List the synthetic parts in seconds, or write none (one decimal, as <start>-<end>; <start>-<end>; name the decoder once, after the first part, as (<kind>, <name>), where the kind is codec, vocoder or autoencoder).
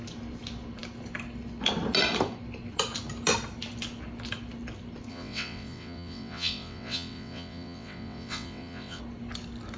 5.1-9.0 (vocoder, WaveNeXt)